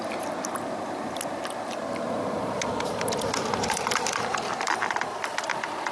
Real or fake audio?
real